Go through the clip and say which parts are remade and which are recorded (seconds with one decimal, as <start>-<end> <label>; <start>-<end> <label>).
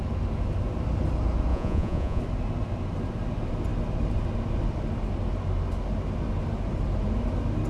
0.0-1.5 recorded; 1.5-2.2 remade; 2.2-7.7 recorded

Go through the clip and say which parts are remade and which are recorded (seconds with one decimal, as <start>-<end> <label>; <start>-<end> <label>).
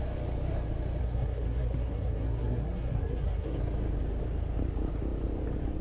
0.0-1.0 recorded; 1.0-3.6 remade; 3.6-5.8 recorded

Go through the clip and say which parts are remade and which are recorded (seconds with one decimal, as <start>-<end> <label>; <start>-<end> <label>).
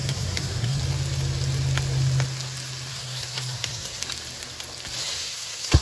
0.0-0.8 remade; 0.8-2.9 recorded; 2.9-4.0 remade; 4.0-5.0 recorded; 5.0-5.8 remade